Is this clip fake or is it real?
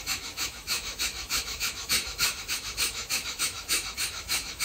fake